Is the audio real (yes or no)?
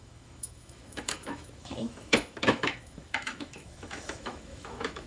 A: no